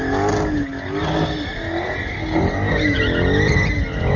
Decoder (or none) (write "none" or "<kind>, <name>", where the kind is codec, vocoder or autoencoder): none